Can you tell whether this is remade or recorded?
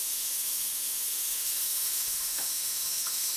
remade